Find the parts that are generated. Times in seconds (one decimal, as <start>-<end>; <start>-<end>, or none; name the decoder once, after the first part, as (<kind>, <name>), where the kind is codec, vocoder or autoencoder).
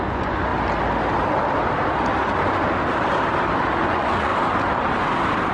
0.0-0.5 (vocoder, Vocos); 3.8-4.3